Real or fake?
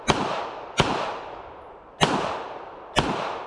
real